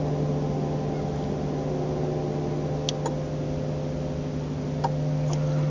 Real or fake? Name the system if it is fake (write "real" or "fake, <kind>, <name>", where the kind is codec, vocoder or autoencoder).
real